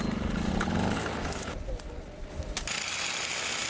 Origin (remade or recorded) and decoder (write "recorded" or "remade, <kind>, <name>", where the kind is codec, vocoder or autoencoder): recorded